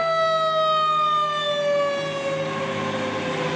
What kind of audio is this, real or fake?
real